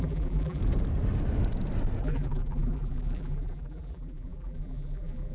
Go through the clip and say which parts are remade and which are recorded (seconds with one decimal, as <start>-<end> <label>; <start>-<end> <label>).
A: 0.0-0.6 remade; 0.6-2.0 recorded; 2.0-5.3 remade